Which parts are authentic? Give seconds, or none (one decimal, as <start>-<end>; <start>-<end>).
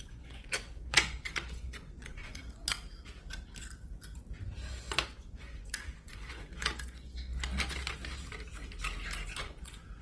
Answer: 2.6-4.8; 7.3-9.4